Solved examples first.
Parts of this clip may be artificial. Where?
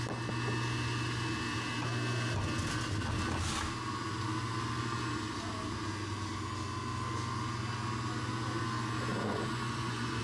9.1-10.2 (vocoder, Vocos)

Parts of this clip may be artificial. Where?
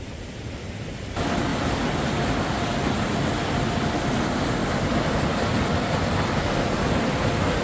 none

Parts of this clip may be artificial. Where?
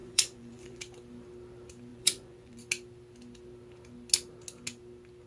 0.0-0.8 (vocoder, Vocos); 1.9-2.6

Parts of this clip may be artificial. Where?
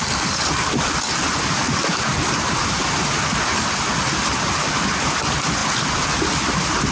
none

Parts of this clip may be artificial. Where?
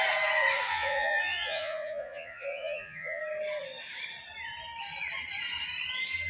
0.7-3.2 (vocoder, Vocos)